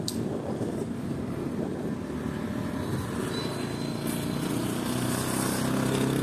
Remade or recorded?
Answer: recorded